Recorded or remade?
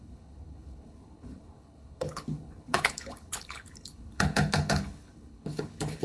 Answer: remade